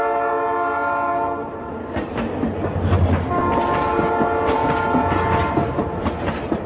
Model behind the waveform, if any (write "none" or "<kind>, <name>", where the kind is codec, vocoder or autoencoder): none